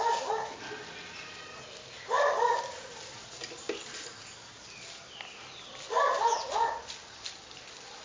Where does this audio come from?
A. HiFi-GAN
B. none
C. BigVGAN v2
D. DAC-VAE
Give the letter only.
B